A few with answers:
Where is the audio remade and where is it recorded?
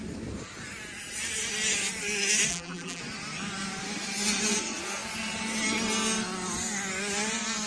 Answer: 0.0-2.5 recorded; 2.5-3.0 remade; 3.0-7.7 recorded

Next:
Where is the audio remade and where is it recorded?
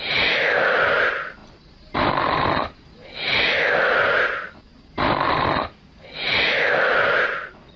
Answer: 0.0-7.8 recorded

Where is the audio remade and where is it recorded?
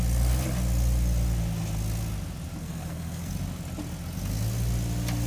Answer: 0.0-2.6 recorded; 2.6-3.3 remade; 3.3-5.3 recorded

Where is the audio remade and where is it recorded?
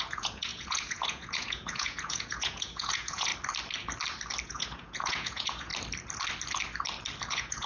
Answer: 0.0-3.3 remade; 3.3-4.4 recorded; 4.4-5.7 remade; 5.7-7.3 recorded; 7.3-7.7 remade